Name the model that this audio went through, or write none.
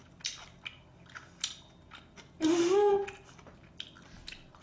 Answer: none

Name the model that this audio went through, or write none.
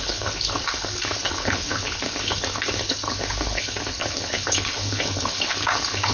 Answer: codec, HILCodec